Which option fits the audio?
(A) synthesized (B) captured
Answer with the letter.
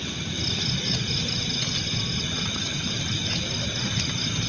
B